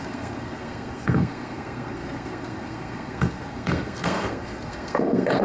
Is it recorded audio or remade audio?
remade